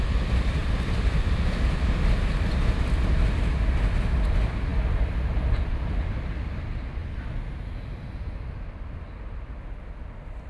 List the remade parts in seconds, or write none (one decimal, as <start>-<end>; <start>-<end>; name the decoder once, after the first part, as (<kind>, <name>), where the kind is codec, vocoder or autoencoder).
0.6-3.1 (vocoder, BigVGAN v2); 4.7-5.7